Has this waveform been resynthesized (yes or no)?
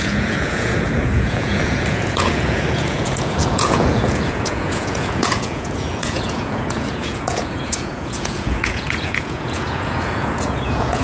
yes